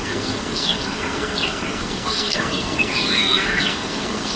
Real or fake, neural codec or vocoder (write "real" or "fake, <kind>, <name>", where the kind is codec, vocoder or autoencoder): fake, codec, SNAC